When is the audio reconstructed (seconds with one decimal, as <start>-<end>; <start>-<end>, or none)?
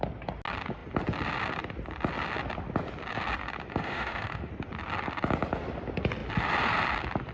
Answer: 3.7-4.5